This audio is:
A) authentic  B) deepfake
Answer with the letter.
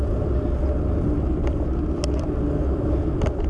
A